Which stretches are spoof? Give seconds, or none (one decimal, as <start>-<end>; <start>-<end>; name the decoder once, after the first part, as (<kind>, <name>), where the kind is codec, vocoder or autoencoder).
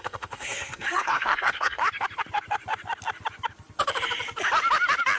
0.0-1.8 (codec, SNAC)